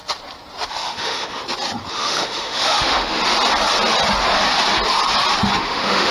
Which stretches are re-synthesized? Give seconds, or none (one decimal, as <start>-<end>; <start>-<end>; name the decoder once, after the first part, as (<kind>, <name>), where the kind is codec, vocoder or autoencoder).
0.7-1.4 (autoencoder, DAC-VAE); 1.9-3.2; 5.6-6.1